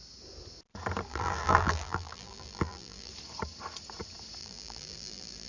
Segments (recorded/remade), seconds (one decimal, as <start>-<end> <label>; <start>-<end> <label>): 0.0-1.1 recorded; 1.1-3.1 remade; 3.1-4.4 recorded; 4.4-5.5 remade